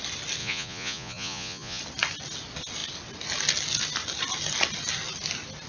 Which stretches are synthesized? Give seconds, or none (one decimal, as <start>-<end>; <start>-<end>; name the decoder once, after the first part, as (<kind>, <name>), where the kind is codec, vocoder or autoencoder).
0.4-1.8 (vocoder, Vocos)